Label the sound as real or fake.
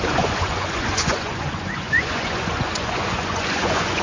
fake